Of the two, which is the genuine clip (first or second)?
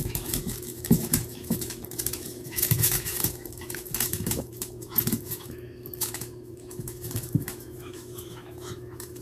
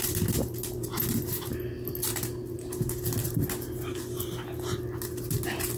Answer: second